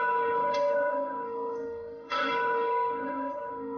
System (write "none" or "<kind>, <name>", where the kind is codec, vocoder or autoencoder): autoencoder, DAC-VAE